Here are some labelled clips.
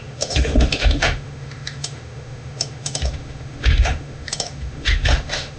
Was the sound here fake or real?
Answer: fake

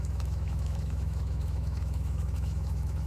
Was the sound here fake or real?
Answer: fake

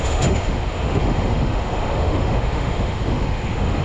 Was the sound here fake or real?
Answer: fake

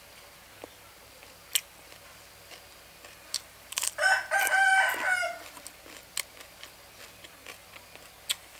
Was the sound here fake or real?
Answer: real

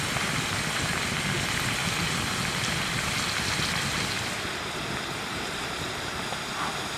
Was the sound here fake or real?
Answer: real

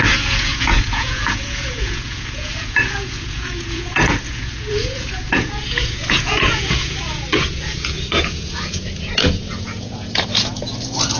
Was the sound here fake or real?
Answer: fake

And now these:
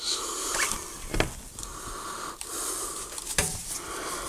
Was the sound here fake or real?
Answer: real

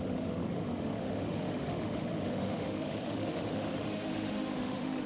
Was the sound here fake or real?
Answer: fake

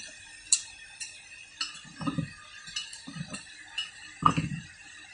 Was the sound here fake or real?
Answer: real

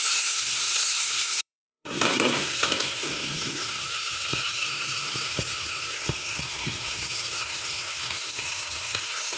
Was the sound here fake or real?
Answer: fake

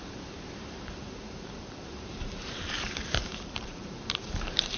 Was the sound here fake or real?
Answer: fake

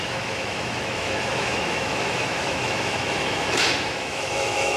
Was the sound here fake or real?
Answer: fake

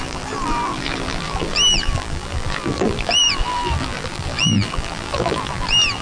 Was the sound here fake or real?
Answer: fake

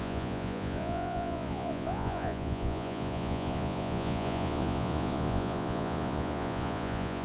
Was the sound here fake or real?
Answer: fake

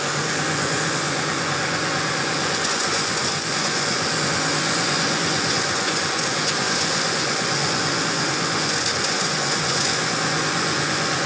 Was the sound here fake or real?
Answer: fake